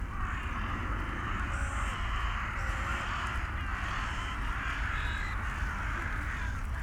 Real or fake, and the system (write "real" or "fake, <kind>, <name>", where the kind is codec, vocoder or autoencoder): real